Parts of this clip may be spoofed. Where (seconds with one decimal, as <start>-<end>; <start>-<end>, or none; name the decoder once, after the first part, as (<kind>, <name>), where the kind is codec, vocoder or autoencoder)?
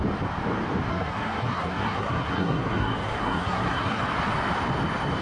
0.9-4.0 (codec, SNAC)